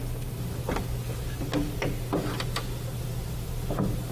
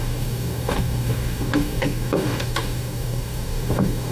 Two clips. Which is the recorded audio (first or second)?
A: first